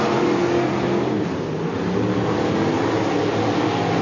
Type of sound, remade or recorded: recorded